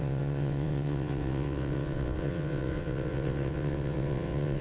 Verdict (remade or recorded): remade